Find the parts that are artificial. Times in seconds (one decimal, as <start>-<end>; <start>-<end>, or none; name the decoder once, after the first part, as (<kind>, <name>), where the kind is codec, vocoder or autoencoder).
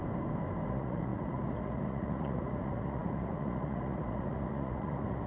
0.7-5.3 (vocoder, Vocos)